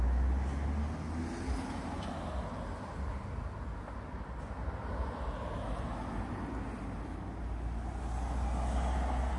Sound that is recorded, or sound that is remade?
recorded